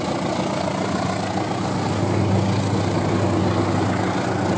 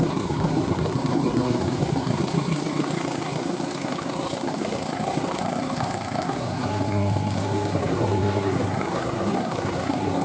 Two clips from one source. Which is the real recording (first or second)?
first